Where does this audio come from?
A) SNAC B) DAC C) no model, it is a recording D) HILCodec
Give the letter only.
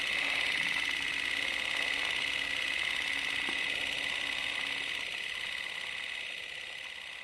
C